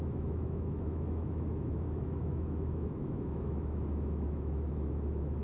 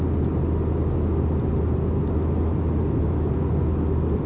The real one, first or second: second